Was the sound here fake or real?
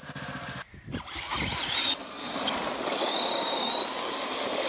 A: real